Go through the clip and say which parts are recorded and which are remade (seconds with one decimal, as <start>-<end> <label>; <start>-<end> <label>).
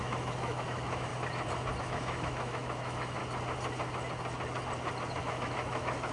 0.0-1.1 remade; 1.1-1.8 recorded; 1.8-3.2 remade; 3.2-5.2 recorded; 5.2-6.1 remade